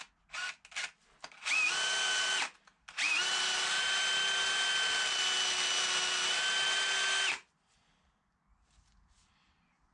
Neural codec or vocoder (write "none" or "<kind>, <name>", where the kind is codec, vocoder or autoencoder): none